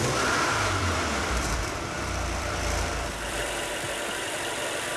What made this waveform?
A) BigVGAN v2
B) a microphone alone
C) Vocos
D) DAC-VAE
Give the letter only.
A